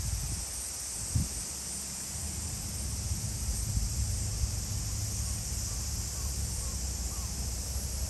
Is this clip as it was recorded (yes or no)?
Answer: yes